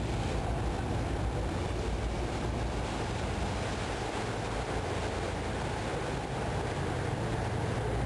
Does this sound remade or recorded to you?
recorded